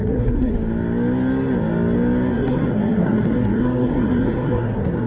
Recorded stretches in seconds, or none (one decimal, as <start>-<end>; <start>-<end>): 0.5-2.3